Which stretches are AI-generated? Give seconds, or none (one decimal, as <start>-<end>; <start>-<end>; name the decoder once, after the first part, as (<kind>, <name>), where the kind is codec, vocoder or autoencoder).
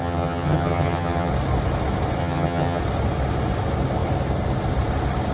0.0-1.3 (vocoder, HiFi-GAN); 2.2-2.8